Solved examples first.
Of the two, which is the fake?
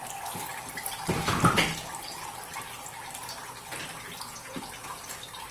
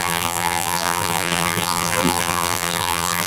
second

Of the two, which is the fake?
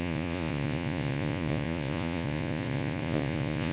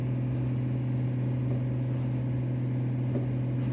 first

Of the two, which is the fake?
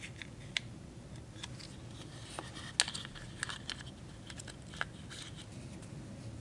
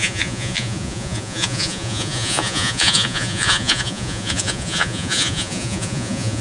second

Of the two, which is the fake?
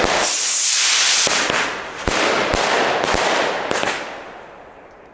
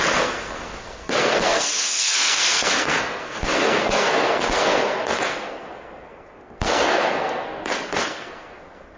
second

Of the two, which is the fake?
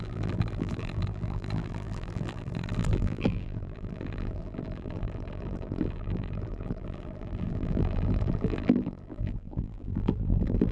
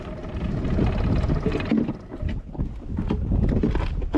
first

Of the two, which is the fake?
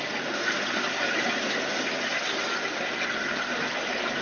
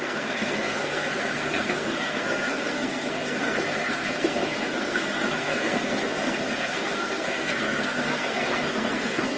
second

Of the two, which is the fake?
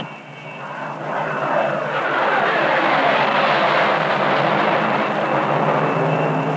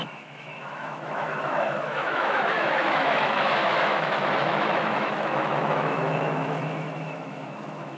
second